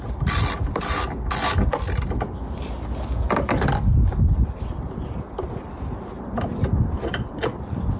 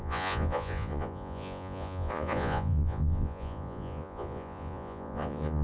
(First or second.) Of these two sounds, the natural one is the first